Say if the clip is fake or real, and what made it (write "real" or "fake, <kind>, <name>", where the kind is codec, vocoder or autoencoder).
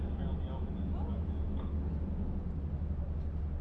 real